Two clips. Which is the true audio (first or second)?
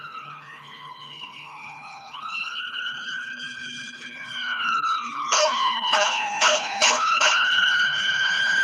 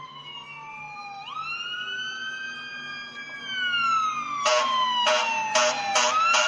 second